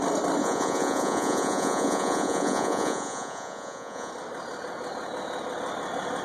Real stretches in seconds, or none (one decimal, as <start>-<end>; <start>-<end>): 0.0-0.4; 4.1-6.2